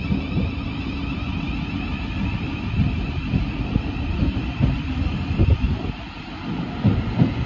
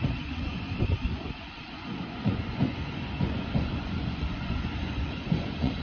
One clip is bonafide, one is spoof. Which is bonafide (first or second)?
first